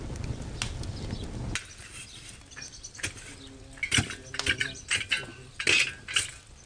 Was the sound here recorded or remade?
recorded